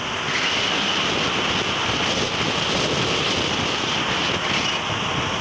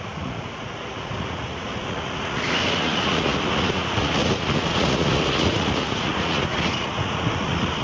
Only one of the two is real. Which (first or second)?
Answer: first